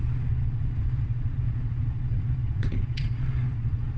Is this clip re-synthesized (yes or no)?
yes